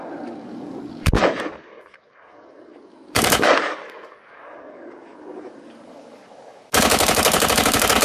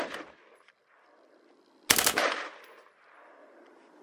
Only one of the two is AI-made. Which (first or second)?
first